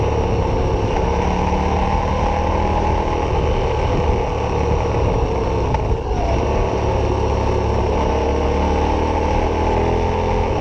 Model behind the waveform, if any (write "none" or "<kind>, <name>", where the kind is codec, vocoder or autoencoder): none